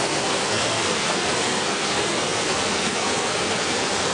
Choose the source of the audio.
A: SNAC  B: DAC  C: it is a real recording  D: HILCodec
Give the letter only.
A